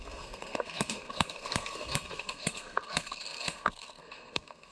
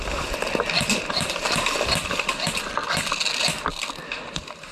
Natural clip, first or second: second